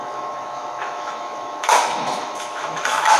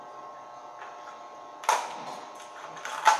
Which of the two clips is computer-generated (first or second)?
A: first